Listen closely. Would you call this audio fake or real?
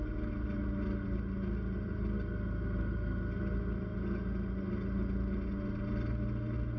real